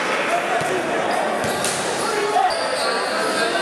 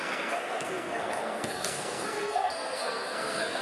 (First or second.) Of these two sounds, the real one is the first